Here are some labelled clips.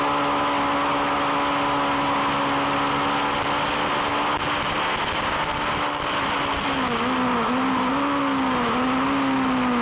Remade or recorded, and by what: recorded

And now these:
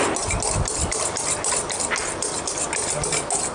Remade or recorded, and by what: recorded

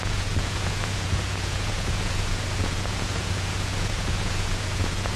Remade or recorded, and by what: remade, vocoder, Vocos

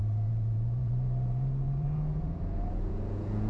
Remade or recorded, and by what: remade, vocoder, Vocos